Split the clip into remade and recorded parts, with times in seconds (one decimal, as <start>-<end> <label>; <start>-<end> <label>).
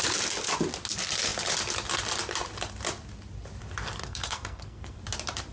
0.0-4.0 recorded; 4.0-5.0 remade; 5.0-5.5 recorded